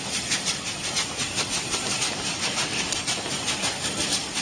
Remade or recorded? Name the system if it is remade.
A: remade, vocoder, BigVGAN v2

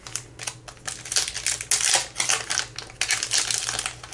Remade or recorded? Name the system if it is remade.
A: recorded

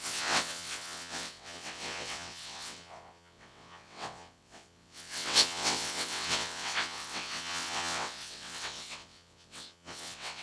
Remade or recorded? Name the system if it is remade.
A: remade, vocoder, WaveNeXt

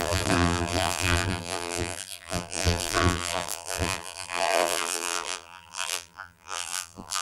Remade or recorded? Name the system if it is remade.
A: remade, vocoder, BigVGAN v2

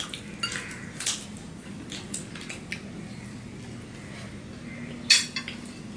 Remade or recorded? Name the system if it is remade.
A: recorded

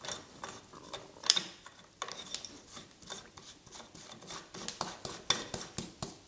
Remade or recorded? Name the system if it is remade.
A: recorded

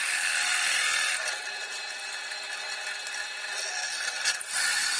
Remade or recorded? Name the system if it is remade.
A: recorded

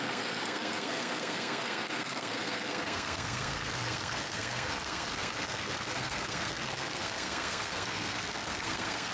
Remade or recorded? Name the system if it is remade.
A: remade, codec, SNAC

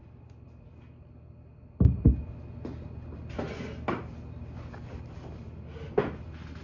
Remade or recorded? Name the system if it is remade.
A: recorded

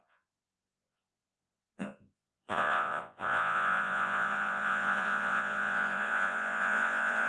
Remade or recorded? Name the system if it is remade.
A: remade, vocoder, Vocos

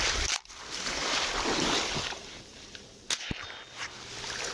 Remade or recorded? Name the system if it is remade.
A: recorded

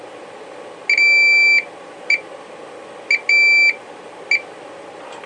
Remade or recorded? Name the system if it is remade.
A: recorded